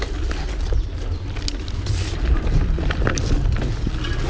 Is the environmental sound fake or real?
real